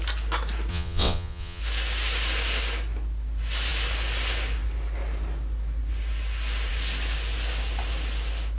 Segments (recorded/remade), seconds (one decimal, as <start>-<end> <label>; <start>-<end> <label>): 0.0-0.7 recorded; 0.7-1.6 remade; 1.6-8.6 recorded